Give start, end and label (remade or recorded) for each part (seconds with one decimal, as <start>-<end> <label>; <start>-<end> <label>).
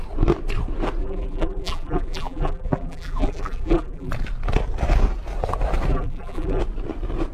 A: 0.0-1.0 recorded; 1.0-4.1 remade; 4.1-5.9 recorded; 5.9-6.6 remade; 6.6-7.3 recorded